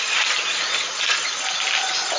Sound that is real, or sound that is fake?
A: real